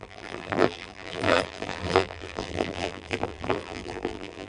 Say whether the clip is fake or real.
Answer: fake